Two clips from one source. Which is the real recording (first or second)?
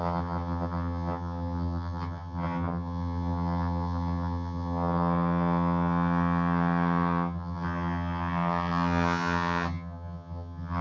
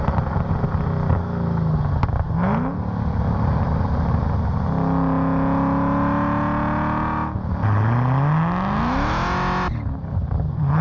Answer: second